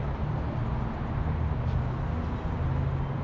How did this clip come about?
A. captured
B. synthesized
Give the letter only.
A